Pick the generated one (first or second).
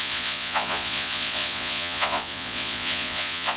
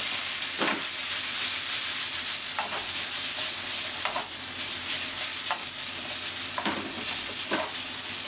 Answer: first